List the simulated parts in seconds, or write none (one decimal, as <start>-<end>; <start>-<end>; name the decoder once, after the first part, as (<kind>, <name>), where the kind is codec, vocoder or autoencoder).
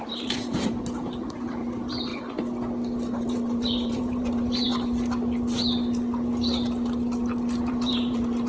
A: 0.0-2.1 (vocoder, BigVGAN v2); 3.2-4.7; 7.7-8.5